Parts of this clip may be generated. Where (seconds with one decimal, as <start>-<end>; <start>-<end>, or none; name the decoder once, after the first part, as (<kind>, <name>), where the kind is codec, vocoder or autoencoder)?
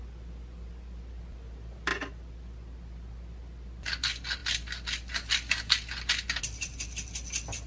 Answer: none